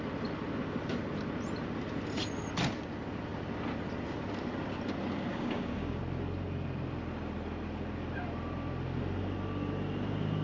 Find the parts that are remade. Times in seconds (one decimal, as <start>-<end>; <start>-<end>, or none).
5.3-6.0